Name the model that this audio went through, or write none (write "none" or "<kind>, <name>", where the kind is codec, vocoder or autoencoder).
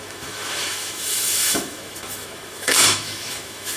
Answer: autoencoder, DAC-VAE